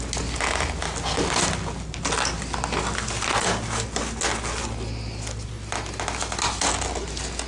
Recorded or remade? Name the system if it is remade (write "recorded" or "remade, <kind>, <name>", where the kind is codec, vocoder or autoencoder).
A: recorded